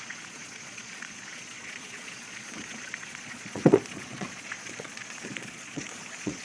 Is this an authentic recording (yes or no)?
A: no